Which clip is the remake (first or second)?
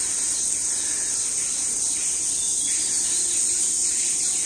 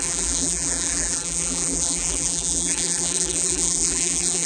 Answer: second